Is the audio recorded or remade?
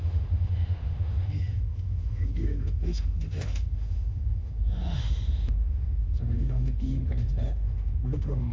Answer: remade